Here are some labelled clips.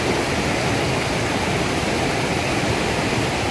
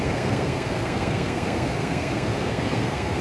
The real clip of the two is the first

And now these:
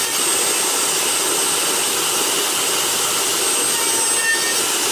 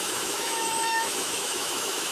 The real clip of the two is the first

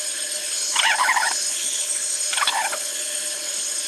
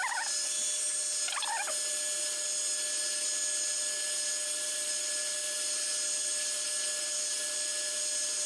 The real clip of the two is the second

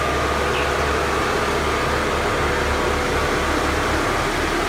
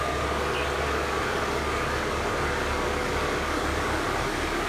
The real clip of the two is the first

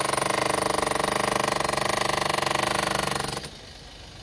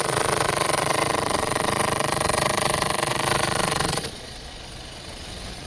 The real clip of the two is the first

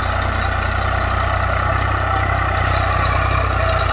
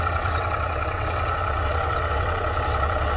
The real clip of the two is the first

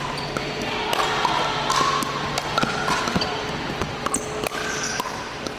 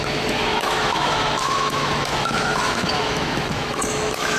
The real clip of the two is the first